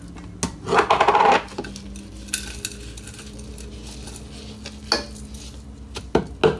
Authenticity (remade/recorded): recorded